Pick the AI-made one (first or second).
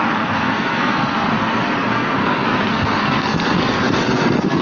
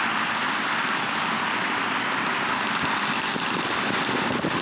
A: first